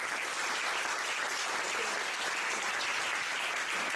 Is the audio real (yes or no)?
yes